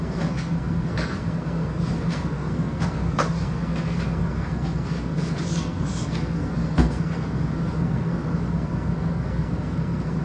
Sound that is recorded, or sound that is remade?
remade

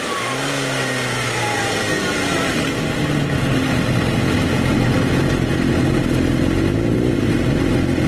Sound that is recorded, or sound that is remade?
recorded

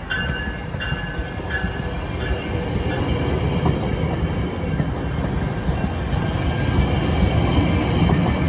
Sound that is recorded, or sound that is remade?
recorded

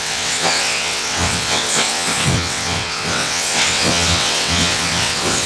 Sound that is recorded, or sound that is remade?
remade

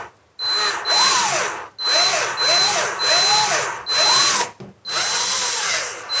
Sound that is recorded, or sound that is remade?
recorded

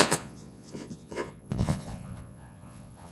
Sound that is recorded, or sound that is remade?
remade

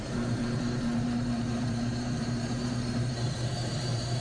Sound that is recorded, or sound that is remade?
remade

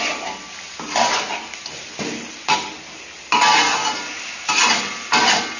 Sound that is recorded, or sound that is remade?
recorded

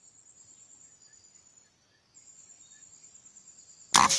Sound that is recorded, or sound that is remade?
recorded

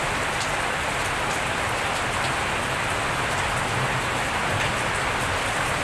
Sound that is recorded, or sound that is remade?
recorded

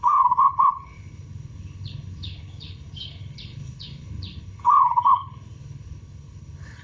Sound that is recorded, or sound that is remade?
remade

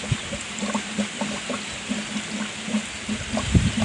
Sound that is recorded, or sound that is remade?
recorded